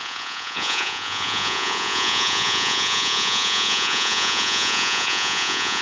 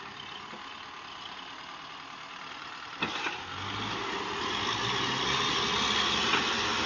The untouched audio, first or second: second